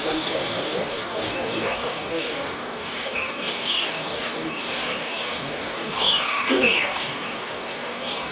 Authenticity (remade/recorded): remade